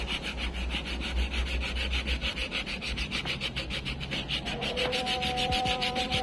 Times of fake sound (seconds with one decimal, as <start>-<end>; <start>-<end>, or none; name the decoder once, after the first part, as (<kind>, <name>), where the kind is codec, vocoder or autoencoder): 2.2-6.2 (vocoder, BigVGAN v2)